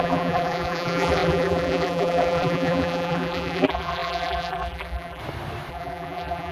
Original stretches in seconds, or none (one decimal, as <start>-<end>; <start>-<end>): 5.2-5.7